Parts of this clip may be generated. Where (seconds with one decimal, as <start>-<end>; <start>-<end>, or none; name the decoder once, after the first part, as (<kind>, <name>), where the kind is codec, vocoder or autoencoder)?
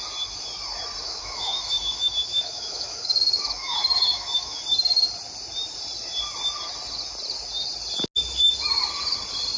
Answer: 1.0-4.6 (autoencoder, DAC-VAE)